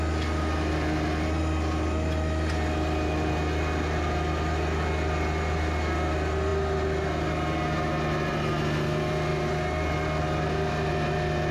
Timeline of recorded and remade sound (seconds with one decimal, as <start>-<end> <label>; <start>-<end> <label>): 0.0-11.5 recorded